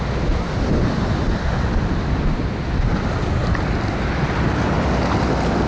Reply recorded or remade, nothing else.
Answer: recorded